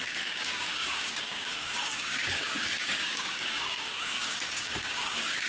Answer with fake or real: fake